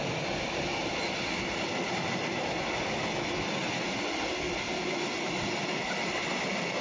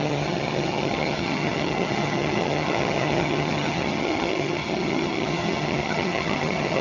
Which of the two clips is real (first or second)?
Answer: first